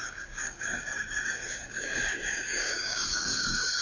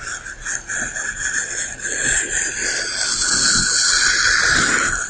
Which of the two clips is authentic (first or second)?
second